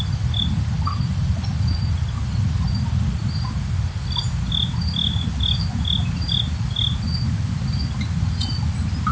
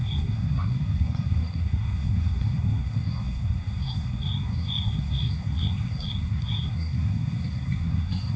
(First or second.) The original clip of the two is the first